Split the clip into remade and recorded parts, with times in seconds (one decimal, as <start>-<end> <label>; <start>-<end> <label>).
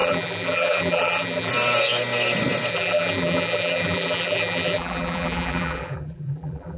0.0-1.5 remade; 1.5-2.7 recorded; 2.7-6.8 remade